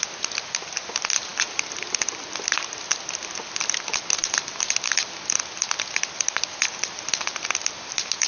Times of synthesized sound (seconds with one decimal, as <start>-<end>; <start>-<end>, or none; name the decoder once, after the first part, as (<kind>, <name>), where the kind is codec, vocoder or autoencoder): none